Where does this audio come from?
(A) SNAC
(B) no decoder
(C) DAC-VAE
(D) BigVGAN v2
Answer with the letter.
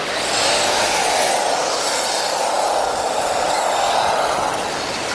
B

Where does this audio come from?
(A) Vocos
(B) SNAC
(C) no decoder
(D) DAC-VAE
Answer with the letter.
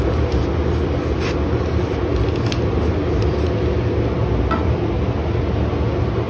C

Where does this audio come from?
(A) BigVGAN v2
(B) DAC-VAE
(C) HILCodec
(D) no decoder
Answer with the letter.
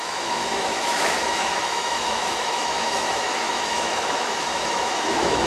B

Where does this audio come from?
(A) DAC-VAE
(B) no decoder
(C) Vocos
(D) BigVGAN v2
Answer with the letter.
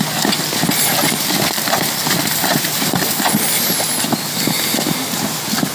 B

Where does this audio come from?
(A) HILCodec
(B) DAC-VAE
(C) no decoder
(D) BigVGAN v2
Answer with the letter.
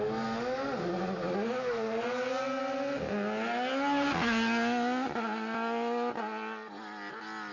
C